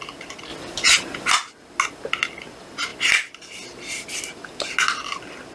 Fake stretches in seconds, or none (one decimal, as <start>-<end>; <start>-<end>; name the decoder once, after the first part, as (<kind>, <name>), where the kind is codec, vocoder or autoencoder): none